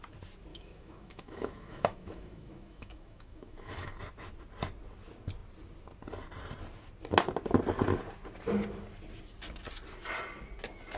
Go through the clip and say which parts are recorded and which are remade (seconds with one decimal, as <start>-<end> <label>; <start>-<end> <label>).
0.0-0.5 recorded; 0.5-4.0 remade; 4.0-11.0 recorded